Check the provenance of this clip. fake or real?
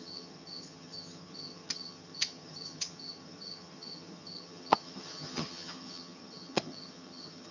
fake